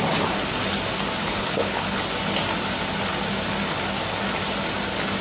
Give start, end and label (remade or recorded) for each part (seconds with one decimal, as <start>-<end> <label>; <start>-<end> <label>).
0.0-1.2 recorded; 1.2-2.0 remade; 2.0-5.2 recorded